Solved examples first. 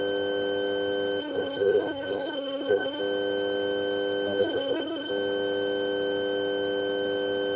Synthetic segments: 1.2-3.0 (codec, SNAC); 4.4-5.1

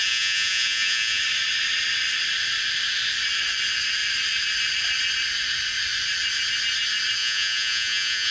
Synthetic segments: 0.0-1.2 (vocoder, Vocos); 7.2-8.3

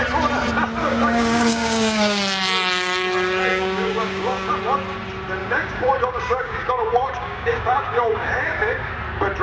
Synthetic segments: 0.8-2.2 (codec, DAC); 3.5-4.5; 5.4-8.9